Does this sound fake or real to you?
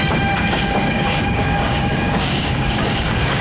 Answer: fake